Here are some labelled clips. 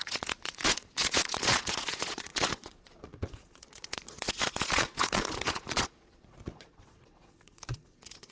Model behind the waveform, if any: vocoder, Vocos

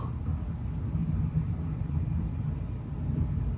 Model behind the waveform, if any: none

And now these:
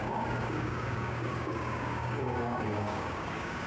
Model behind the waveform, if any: codec, DAC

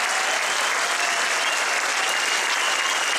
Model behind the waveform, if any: none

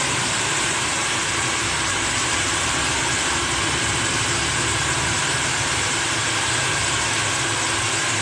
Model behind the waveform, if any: vocoder, BigVGAN v2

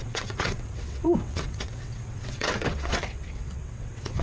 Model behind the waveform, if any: vocoder, WaveNeXt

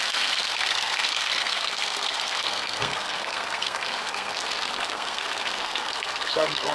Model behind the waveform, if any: codec, SNAC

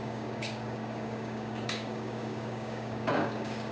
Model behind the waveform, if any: codec, DAC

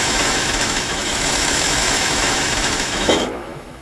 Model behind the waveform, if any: autoencoder, DAC-VAE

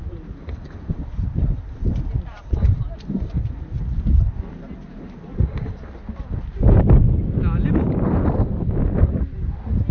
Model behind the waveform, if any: none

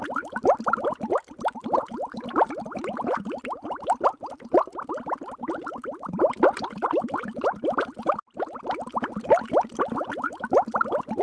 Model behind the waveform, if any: none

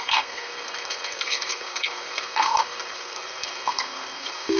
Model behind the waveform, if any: codec, SNAC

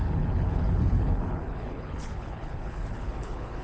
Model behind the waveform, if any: codec, HILCodec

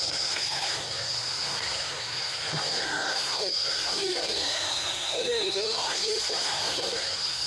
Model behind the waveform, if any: codec, SNAC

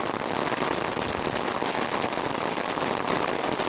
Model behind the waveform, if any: none